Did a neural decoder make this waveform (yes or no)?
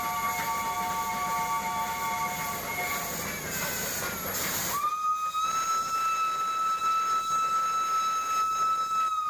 no